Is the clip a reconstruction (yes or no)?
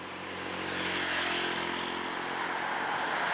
no